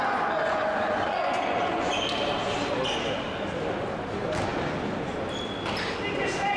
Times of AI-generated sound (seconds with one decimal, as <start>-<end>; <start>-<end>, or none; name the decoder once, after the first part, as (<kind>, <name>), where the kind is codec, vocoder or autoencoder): 0.0-2.0 (vocoder, Vocos)